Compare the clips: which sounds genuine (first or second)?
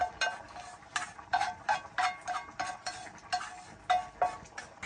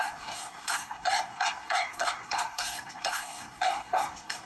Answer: first